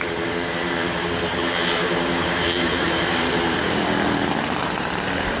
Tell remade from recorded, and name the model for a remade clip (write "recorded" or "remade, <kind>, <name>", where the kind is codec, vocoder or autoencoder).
remade, vocoder, BigVGAN v2